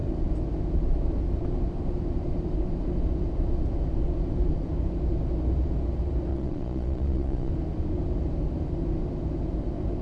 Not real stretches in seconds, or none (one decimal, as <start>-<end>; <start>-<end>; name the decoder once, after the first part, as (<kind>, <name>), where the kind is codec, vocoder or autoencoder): 6.3-7.5 (vocoder, Vocos)